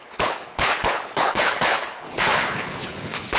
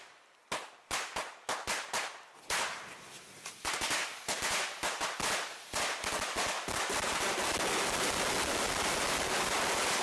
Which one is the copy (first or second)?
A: first